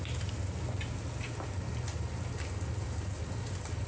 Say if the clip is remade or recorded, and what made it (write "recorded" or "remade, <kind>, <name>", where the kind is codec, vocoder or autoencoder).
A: recorded